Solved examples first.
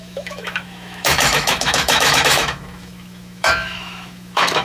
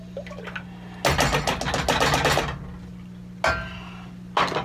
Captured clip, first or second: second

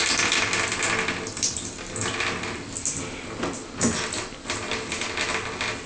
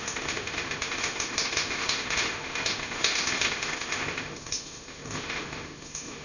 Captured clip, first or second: first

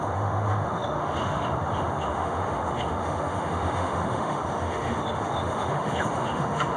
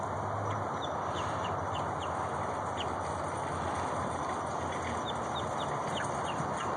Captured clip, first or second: second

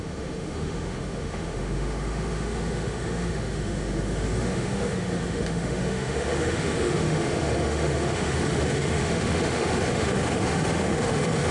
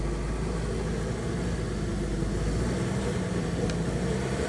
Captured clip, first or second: second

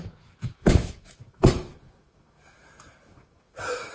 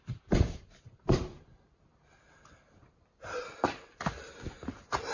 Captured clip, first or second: second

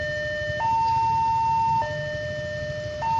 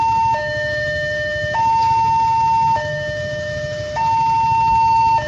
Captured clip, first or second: first